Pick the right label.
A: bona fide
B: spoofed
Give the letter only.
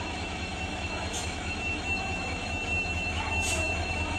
B